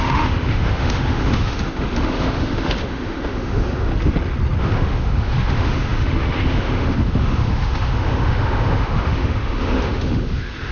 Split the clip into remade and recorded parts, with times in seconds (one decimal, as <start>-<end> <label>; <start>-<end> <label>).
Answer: 0.0-3.9 remade; 3.9-4.6 recorded; 4.6-10.7 remade